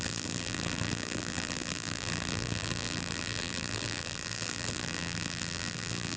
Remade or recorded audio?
remade